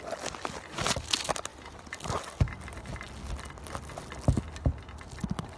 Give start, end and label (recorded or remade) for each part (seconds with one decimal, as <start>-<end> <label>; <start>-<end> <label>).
0.0-5.6 recorded